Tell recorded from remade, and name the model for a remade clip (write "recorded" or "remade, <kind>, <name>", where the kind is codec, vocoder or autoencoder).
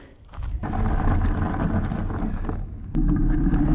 recorded